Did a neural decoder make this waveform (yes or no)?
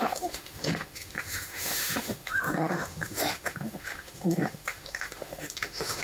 yes